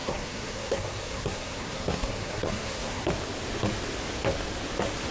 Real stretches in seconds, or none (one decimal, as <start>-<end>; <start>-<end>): 3.1-5.1